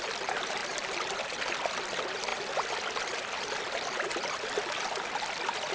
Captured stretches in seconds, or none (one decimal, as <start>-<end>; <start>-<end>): 0.0-5.7